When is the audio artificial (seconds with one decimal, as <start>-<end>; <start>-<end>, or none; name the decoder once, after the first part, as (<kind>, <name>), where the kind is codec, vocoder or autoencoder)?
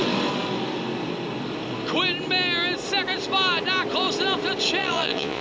4.8-5.4 (vocoder, Vocos)